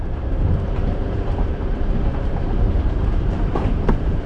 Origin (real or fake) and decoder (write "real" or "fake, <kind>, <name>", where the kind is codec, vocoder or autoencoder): fake, vocoder, BigVGAN v2